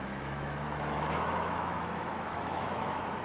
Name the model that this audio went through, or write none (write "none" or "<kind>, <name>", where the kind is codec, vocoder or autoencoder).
autoencoder, DAC-VAE